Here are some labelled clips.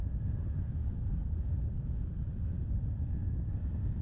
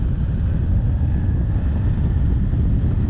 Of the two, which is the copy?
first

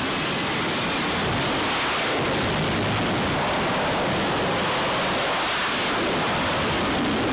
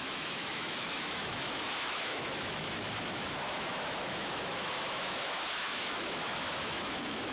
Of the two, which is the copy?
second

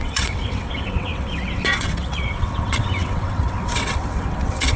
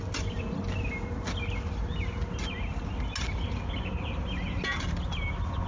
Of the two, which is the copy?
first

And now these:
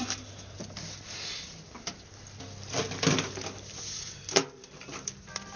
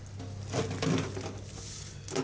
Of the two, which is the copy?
first